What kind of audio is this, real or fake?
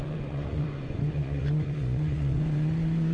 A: fake